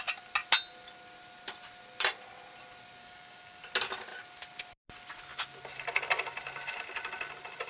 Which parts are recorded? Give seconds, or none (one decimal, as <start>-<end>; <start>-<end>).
0.0-3.0; 3.6-7.7